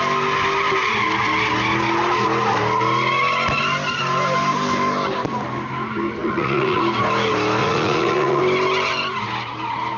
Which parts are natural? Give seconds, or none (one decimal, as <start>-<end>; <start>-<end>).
0.0-6.2; 6.8-7.6; 8.4-10.0